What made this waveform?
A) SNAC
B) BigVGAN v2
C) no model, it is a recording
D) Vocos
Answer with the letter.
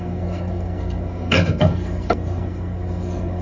A